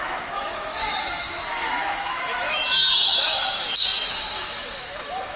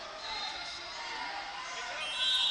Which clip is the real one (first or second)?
second